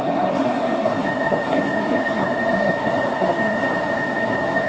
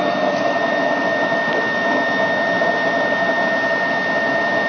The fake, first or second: first